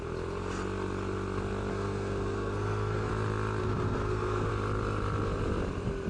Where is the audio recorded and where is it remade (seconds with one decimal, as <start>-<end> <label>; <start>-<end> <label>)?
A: 0.0-1.7 recorded; 1.7-3.1 remade; 3.1-3.6 recorded; 3.6-4.5 remade; 4.5-6.1 recorded